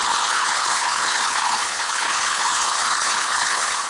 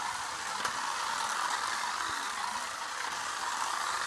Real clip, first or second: second